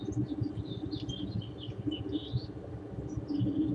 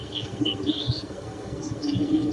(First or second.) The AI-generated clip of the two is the second